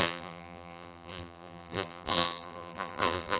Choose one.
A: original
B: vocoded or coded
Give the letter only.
B